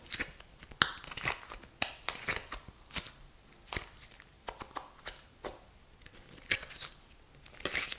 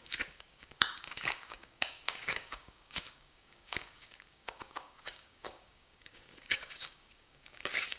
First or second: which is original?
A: first